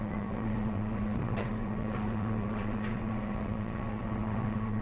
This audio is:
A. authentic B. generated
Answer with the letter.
B